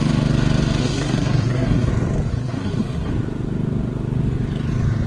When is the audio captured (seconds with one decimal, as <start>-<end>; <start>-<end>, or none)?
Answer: 0.0-0.8; 1.9-2.3; 3.1-5.1